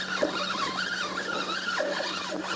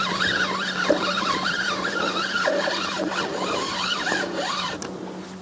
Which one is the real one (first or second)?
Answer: first